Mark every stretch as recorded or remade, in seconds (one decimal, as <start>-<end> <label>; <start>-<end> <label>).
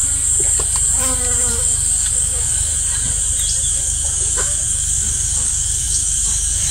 0.0-1.5 recorded; 1.5-2.7 remade; 2.7-3.7 recorded; 3.7-6.7 remade